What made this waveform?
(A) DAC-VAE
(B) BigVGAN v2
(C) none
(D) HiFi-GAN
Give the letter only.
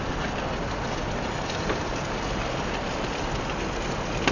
C